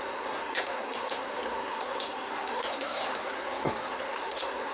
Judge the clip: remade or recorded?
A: remade